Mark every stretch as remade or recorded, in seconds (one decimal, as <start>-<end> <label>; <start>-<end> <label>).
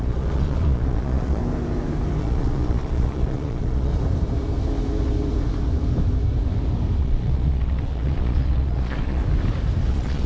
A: 0.0-1.4 remade; 1.4-2.2 recorded; 2.2-3.9 remade; 3.9-7.0 recorded; 7.0-9.2 remade; 9.2-9.9 recorded; 9.9-10.3 remade